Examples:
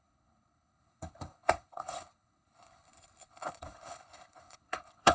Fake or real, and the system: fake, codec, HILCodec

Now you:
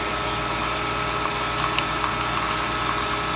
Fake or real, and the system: real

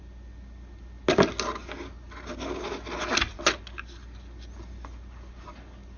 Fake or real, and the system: real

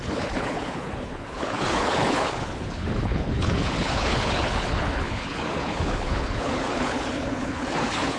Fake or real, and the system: fake, codec, HILCodec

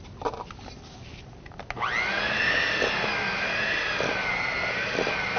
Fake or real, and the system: real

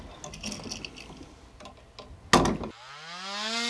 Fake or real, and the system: real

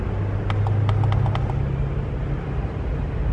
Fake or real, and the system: real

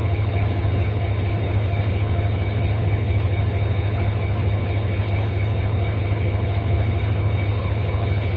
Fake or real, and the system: fake, codec, HILCodec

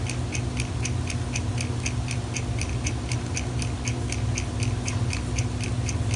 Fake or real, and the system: real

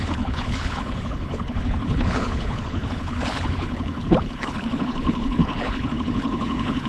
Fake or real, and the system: fake, codec, HILCodec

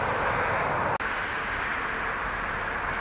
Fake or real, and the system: real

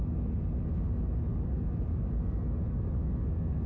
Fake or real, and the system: real